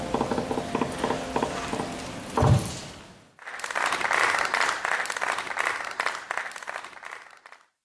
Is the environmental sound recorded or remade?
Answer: recorded